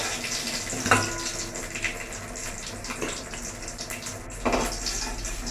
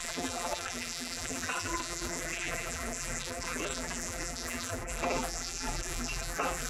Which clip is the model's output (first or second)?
second